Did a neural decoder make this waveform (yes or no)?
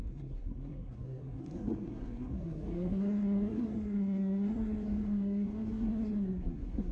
yes